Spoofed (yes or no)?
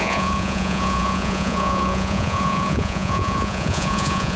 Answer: yes